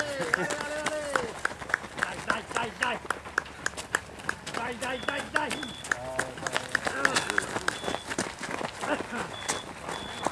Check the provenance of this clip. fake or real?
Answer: real